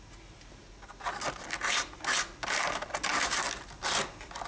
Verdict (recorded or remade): recorded